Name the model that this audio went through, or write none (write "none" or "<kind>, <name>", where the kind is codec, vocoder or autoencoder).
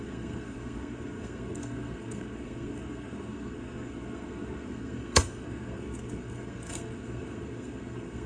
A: codec, SNAC